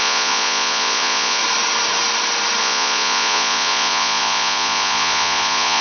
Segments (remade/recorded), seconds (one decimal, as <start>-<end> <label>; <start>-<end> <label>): 0.0-1.4 remade; 1.4-2.6 recorded; 2.6-5.8 remade